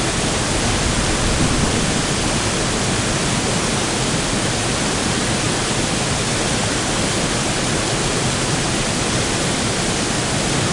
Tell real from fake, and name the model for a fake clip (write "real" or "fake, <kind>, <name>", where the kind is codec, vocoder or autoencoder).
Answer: real